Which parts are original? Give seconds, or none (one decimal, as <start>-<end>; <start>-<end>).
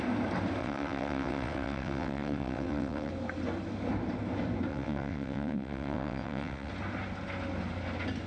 0.0-0.6; 3.1-4.7; 6.7-8.3